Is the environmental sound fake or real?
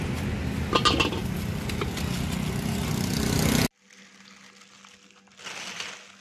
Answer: real